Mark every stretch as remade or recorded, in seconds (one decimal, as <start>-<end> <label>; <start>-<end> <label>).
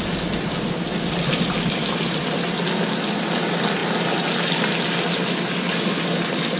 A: 0.0-6.6 recorded